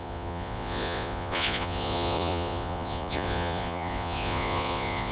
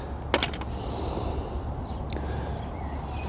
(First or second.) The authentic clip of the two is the second